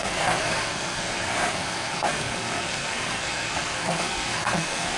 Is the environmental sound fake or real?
fake